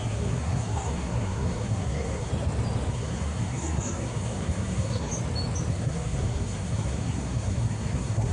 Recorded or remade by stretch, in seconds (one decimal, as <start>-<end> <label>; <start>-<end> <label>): 0.0-2.3 remade; 2.3-2.9 recorded; 2.9-5.1 remade; 5.1-5.7 recorded; 5.7-8.3 remade